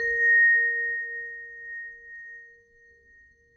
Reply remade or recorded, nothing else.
remade